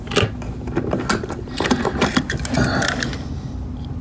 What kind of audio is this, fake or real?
real